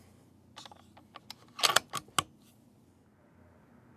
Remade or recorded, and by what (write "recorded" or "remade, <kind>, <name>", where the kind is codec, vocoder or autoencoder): recorded